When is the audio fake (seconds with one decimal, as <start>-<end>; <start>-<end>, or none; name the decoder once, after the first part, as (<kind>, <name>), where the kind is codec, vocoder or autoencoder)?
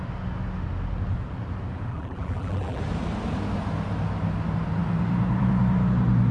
1.9-2.8 (vocoder, BigVGAN v2)